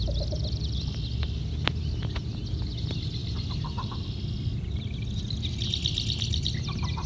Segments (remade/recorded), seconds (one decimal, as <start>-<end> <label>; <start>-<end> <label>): 0.0-7.1 recorded